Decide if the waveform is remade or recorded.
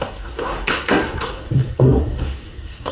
remade